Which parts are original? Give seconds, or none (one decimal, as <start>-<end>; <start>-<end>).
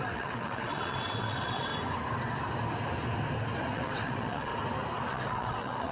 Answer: 1.7-3.7; 4.5-5.1